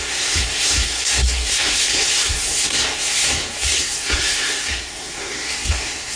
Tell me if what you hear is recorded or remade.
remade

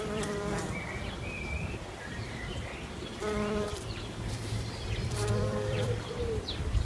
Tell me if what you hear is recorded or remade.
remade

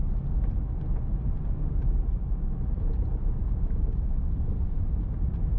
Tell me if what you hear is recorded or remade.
recorded